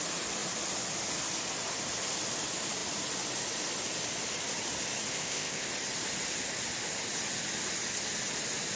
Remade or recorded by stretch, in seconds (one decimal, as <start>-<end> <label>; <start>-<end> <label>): 0.0-5.1 recorded; 5.1-5.7 remade; 5.7-8.8 recorded